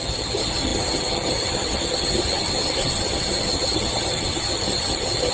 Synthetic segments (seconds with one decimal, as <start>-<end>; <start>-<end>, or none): 0.0-5.3